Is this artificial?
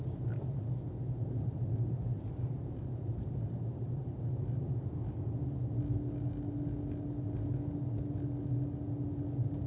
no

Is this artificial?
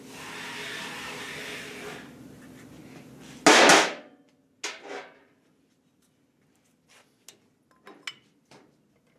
no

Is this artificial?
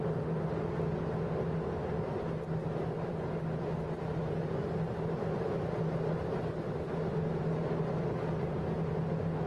no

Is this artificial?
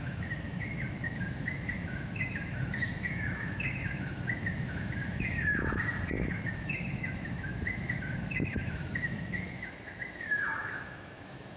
yes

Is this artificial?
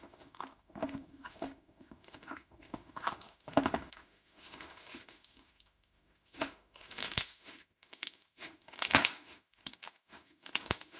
yes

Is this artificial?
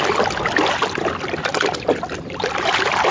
no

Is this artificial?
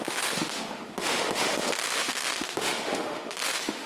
yes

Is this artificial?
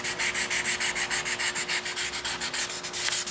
no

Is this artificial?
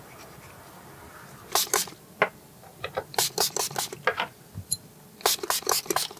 no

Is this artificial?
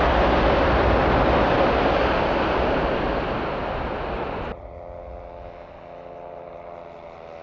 no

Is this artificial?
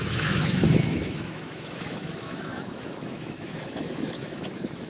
yes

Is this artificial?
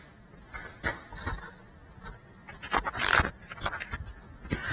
no